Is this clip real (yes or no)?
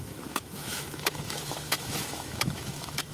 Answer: no